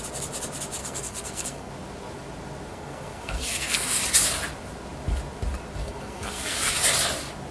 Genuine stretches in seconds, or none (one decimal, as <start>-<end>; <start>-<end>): 0.0-0.8; 1.7-2.7; 4.0-5.8; 6.7-7.5